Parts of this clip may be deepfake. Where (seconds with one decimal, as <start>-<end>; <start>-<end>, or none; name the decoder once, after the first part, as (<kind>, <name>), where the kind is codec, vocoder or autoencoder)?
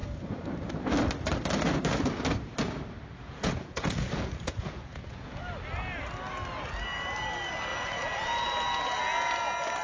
3.2-5.4 (vocoder, Vocos); 7.7-9.0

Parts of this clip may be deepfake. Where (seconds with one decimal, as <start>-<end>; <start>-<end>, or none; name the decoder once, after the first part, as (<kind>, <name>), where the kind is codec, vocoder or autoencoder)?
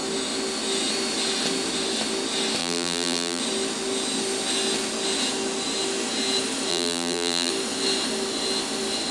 2.6-3.4 (vocoder, BigVGAN v2); 6.7-7.5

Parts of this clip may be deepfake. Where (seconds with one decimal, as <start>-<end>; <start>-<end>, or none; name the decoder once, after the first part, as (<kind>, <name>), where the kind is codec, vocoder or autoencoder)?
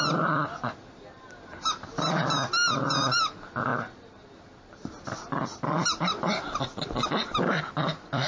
none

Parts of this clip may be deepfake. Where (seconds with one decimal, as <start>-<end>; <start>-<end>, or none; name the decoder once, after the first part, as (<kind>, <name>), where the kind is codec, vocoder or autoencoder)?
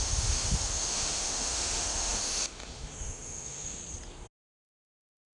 0.0-3.8 (autoencoder, DAC-VAE); 4.6-5.4